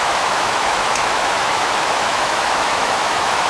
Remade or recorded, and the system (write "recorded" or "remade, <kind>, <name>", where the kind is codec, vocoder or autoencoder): remade, autoencoder, DAC-VAE